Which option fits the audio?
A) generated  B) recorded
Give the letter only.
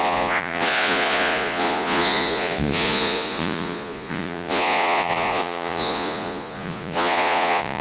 A